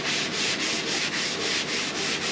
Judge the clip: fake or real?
real